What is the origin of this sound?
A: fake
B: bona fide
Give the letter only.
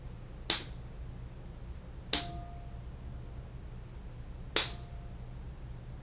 B